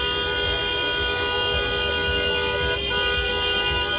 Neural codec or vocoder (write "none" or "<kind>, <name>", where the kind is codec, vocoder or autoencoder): none